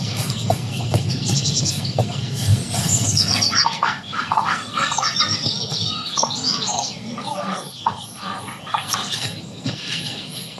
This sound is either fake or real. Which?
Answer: fake